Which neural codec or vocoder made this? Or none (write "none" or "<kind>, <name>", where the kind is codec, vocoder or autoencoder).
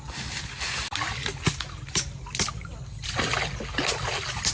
none